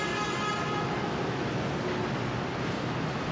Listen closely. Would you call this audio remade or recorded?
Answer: recorded